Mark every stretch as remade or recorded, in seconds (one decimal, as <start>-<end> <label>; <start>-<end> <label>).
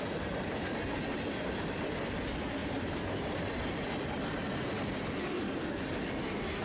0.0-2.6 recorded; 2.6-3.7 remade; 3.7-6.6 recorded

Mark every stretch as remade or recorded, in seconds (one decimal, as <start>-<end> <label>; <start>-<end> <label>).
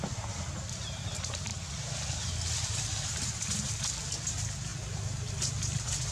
0.0-6.1 recorded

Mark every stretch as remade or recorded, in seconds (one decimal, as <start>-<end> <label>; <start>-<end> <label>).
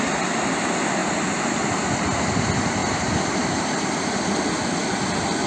0.0-1.0 recorded; 1.0-1.7 remade; 1.7-2.8 recorded; 2.8-3.9 remade; 3.9-5.5 recorded